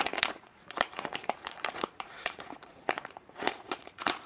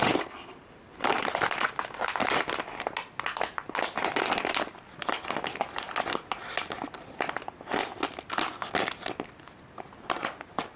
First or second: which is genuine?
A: second